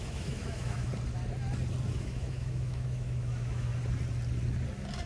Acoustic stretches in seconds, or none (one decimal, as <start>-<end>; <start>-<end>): 0.9-1.9; 3.7-5.1